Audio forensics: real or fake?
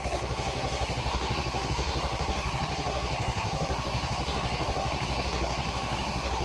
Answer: fake